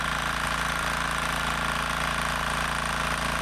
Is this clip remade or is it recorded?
recorded